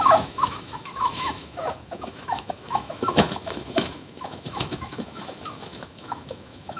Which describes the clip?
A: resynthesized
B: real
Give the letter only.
A